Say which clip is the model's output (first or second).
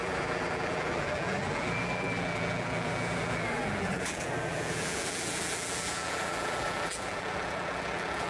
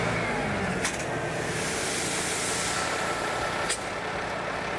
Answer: first